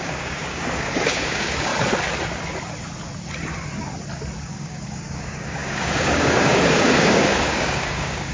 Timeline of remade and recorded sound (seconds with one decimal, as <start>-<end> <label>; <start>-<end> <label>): 0.0-1.7 remade; 1.7-4.4 recorded; 4.4-8.3 remade